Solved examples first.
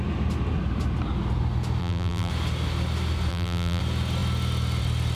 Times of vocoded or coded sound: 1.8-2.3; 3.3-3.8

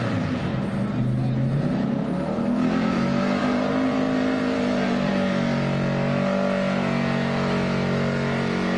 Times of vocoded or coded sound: 3.4-5.1

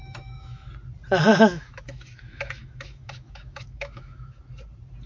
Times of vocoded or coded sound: 0.0-0.7; 1.3-4.4

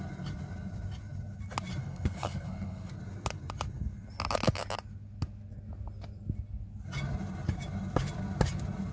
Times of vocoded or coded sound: 1.8-2.9

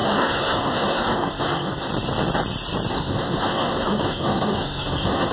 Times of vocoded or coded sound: 0.0-1.9; 2.9-5.3

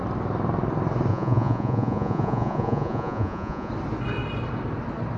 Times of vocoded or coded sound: 1.1-3.7

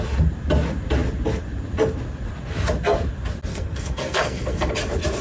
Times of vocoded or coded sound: 3.5-4.7